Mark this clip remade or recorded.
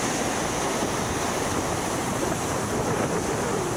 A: recorded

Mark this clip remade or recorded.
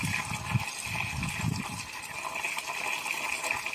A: recorded